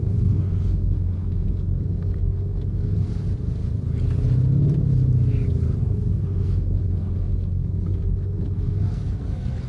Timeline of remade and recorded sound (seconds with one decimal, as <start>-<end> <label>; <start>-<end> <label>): 0.0-3.1 remade; 3.1-5.8 recorded; 5.8-9.7 remade